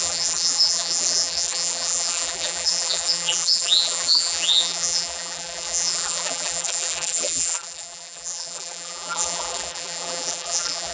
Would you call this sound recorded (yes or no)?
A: no